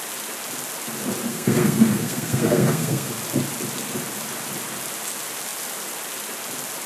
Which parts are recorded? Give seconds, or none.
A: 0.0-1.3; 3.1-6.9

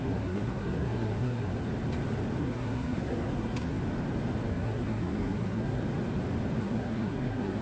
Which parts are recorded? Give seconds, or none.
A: 1.5-2.4; 3.8-4.5; 5.8-6.6